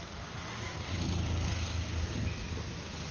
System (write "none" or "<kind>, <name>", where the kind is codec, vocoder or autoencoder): none